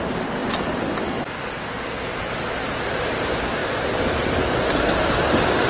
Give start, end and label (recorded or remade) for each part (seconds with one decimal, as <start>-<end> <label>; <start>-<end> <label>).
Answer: 0.0-5.7 recorded